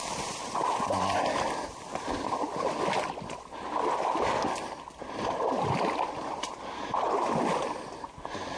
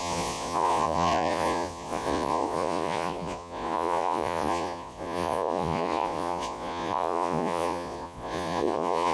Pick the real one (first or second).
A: first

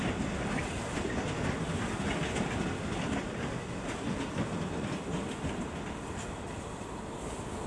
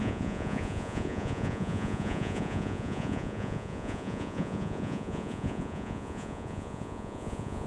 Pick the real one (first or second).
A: first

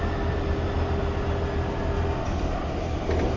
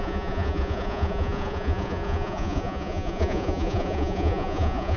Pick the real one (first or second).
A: first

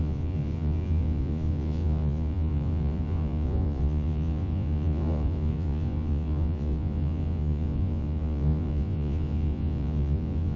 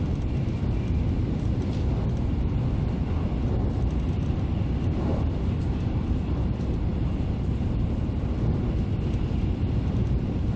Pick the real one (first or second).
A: second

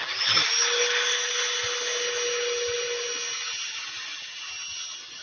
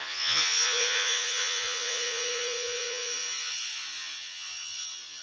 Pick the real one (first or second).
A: first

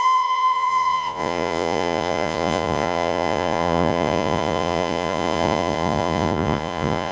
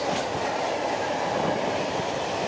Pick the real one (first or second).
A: second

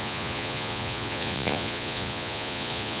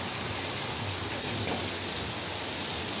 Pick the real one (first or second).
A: second